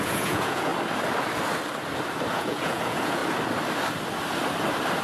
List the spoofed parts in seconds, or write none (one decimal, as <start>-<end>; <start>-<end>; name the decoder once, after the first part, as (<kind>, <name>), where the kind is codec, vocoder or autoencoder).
0.0-0.7 (vocoder, Vocos); 2.3-3.2